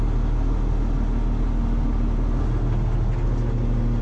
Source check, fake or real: real